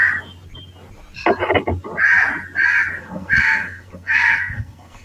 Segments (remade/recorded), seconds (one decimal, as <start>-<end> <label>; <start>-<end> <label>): 0.0-3.0 recorded; 3.0-5.0 remade